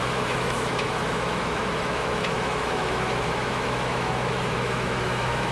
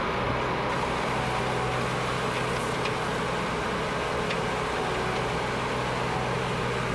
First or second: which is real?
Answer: second